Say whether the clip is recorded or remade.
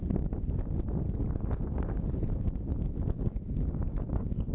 recorded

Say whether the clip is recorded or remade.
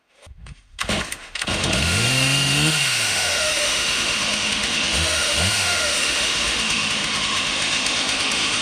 remade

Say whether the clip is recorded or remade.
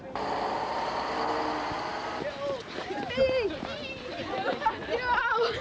recorded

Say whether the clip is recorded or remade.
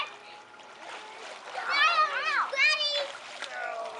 recorded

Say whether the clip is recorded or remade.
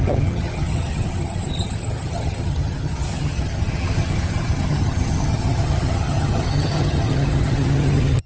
remade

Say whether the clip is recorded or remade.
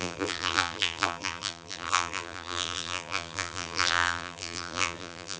remade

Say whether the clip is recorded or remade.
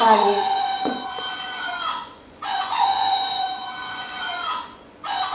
remade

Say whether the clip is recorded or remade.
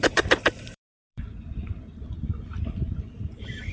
remade